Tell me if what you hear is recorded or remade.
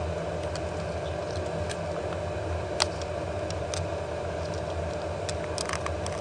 recorded